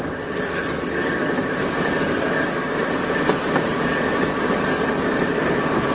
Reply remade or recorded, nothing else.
recorded